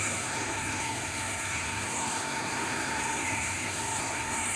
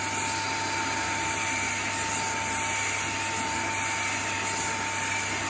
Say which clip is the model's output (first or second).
first